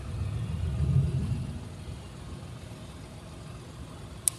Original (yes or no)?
yes